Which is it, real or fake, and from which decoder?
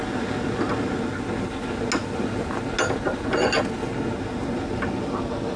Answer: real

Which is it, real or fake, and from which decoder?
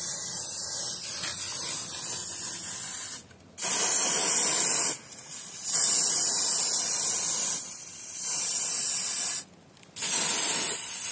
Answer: real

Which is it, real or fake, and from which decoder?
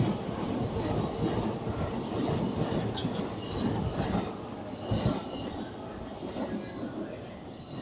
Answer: real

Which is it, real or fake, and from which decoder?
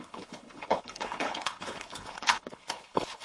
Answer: fake, codec, HILCodec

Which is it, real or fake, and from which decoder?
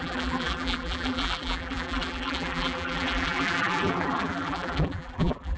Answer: fake, vocoder, BigVGAN v2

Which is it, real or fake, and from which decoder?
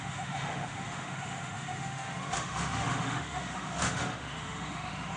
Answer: fake, autoencoder, DAC-VAE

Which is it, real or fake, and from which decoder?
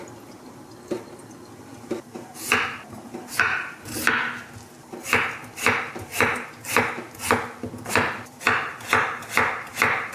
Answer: real